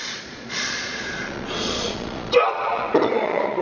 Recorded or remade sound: remade